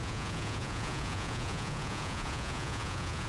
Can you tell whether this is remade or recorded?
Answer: remade